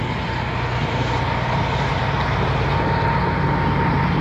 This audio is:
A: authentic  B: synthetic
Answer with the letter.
A